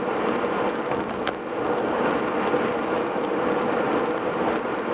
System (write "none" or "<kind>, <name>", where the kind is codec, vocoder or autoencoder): none